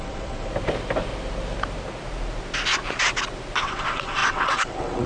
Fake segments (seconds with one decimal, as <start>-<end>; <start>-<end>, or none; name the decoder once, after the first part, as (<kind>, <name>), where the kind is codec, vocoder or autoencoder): 0.0-0.5 (vocoder, WaveNeXt); 3.6-5.1